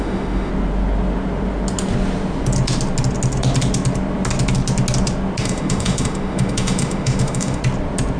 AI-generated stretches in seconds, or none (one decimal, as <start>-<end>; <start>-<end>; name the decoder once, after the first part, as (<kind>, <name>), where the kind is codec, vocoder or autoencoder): 0.0-0.5 (autoencoder, DAC-VAE); 5.4-7.6